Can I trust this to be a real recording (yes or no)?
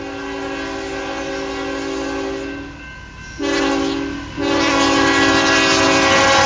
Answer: yes